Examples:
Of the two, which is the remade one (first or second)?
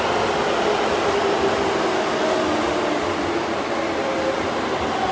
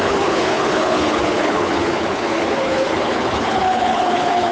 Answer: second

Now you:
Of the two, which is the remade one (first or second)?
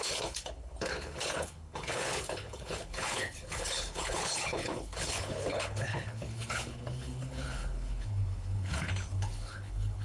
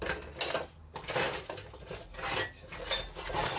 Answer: first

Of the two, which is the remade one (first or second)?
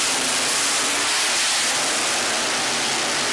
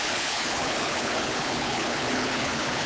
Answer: second